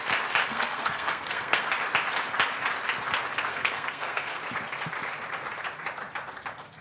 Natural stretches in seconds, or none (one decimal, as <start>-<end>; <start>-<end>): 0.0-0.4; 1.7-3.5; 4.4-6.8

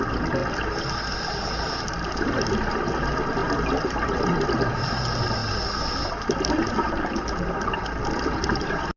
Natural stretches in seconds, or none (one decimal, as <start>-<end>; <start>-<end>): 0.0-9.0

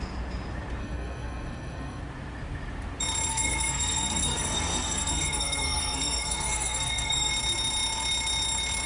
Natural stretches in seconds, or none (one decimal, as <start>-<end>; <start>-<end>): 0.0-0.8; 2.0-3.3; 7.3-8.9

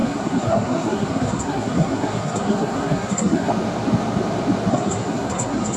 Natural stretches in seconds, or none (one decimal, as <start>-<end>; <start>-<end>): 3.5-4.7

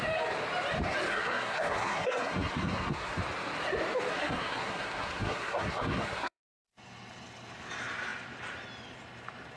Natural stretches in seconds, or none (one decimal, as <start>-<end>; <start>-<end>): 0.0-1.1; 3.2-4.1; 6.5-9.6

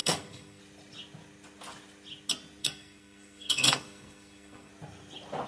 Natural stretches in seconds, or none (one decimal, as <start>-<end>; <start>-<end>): 0.6-2.6; 4.7-5.5